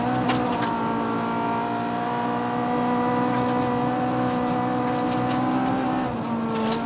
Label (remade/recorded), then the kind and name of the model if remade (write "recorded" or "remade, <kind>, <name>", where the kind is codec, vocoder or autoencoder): recorded